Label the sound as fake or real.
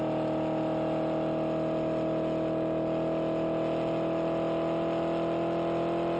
real